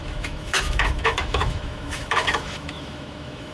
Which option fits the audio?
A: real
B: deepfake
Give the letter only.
B